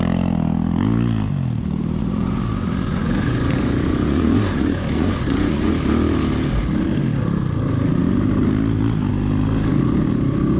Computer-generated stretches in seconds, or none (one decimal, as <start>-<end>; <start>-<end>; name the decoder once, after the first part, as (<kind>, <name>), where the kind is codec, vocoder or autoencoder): 2.0-5.7 (vocoder, Vocos)